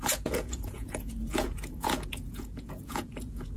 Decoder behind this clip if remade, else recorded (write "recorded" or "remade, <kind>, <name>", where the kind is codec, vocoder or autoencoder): remade, vocoder, Vocos